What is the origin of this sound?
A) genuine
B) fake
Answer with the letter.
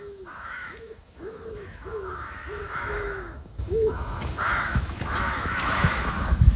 B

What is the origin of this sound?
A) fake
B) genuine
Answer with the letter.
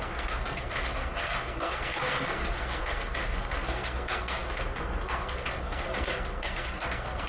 A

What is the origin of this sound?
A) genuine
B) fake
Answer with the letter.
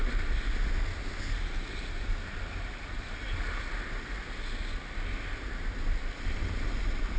A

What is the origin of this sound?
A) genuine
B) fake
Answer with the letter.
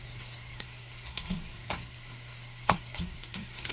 B